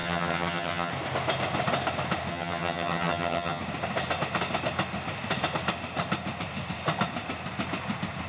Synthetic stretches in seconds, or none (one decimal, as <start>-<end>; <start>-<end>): 0.0-0.9; 2.3-3.6